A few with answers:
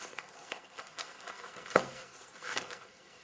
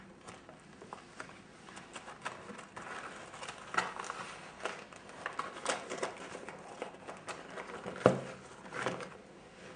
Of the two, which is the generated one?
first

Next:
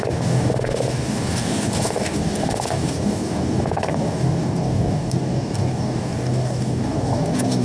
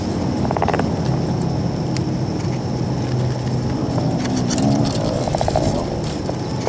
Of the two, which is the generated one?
first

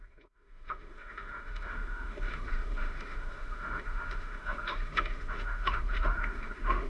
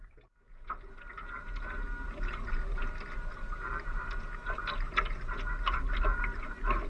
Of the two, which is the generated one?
first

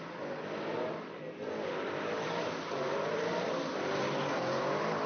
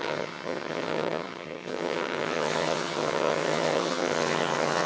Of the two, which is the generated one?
second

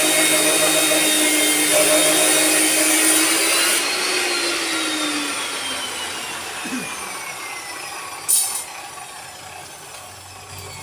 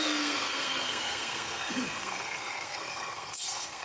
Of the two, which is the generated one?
second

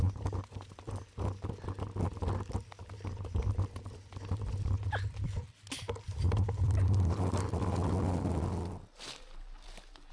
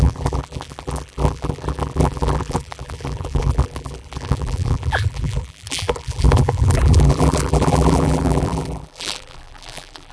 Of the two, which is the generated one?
second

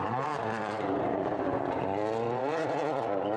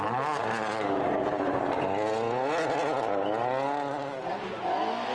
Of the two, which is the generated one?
first